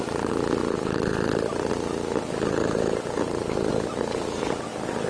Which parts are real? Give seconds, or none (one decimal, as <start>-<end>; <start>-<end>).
0.0-5.1